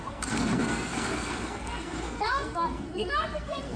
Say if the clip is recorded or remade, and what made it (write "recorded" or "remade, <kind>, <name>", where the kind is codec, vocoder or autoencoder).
remade, codec, SNAC